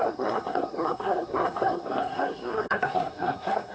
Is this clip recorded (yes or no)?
no